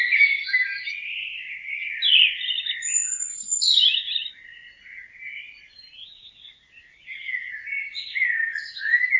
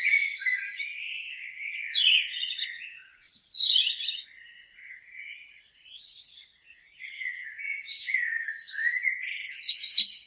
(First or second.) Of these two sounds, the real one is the first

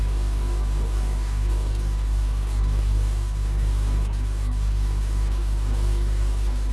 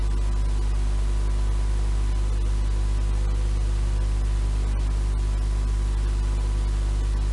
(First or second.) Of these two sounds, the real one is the second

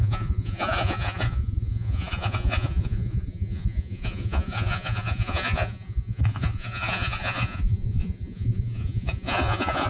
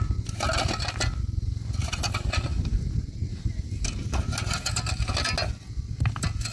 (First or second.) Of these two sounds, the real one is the second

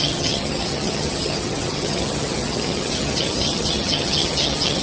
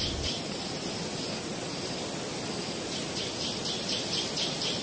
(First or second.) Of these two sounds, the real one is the second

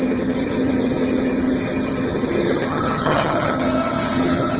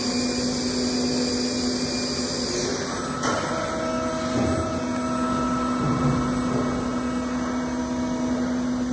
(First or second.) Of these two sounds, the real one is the second